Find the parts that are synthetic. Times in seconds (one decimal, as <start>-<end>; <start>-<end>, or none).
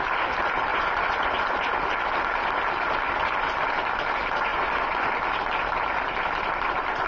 0.7-1.4; 4.5-5.1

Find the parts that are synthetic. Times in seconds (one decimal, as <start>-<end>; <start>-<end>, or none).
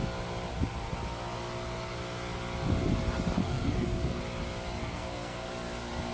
3.4-4.2; 4.8-5.5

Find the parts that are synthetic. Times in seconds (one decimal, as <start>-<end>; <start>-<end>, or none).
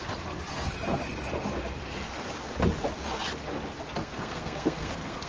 4.0-5.3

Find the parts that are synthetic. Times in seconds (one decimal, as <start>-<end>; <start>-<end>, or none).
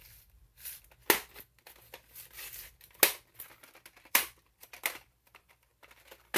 0.0-0.5; 4.1-5.7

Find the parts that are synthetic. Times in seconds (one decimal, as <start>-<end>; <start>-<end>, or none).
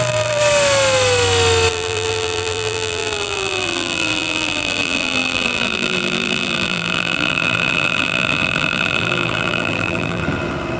0.0-0.4; 1.7-10.2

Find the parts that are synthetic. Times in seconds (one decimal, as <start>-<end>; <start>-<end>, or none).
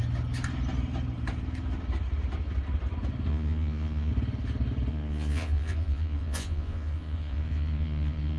3.3-4.1; 4.9-8.4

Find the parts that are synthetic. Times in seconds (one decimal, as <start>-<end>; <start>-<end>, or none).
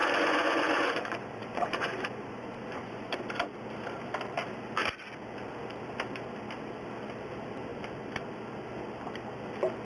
0.0-3.3